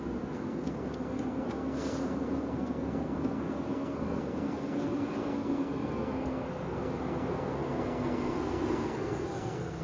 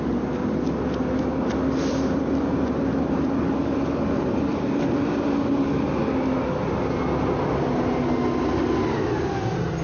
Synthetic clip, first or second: first